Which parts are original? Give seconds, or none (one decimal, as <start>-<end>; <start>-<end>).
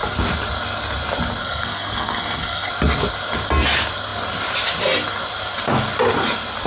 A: 0.0-1.4; 2.7-6.7